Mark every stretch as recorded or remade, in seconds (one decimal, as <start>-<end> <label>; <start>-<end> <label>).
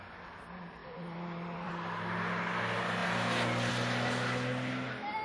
0.0-0.8 recorded; 0.8-1.7 remade; 1.7-5.2 recorded